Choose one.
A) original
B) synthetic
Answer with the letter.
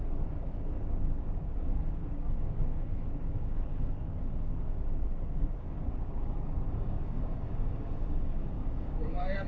B